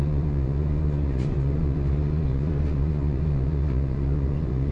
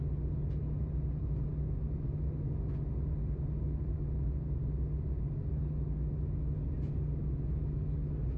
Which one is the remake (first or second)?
first